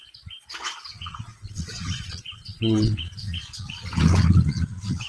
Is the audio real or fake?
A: fake